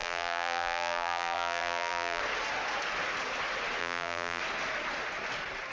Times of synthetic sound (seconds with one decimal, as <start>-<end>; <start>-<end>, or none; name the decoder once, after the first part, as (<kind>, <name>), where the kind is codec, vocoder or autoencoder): 0.0-2.2 (vocoder, BigVGAN v2); 3.8-4.4